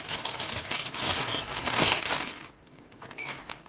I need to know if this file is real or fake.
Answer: fake